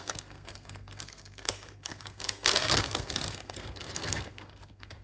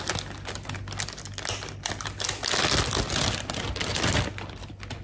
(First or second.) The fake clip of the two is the first